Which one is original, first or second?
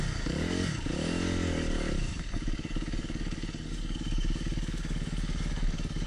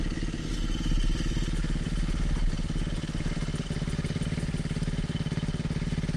second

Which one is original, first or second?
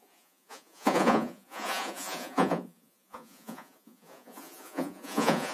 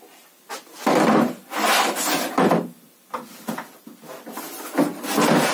second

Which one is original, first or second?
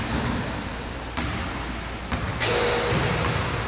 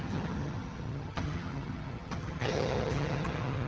first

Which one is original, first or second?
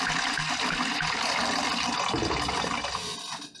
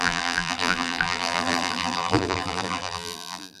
first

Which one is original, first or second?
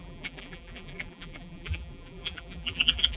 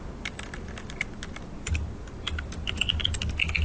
second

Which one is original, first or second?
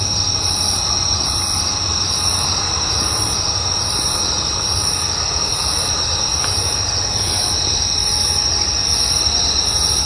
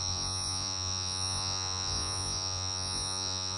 first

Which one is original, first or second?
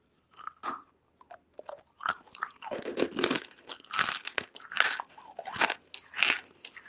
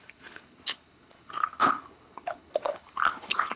first